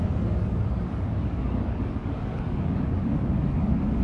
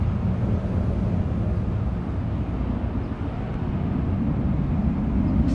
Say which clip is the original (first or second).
second